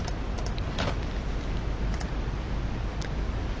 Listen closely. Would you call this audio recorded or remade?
remade